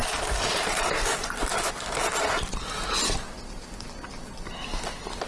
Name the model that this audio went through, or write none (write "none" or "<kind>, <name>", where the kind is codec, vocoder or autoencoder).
none